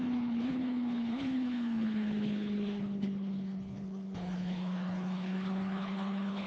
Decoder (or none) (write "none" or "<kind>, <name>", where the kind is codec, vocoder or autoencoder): codec, HILCodec